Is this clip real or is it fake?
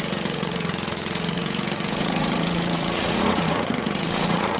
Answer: fake